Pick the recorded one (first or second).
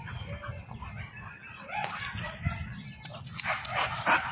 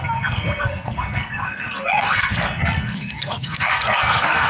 first